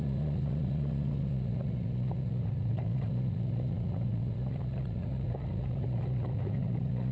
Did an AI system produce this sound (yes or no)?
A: yes